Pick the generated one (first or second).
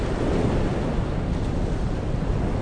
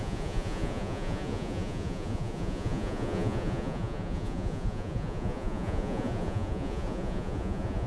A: second